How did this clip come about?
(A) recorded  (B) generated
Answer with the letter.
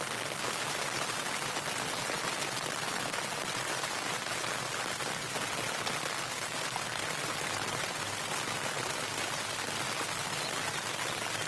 A